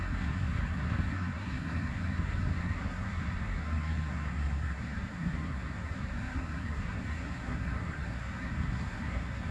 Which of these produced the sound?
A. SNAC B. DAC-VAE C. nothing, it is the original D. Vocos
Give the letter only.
A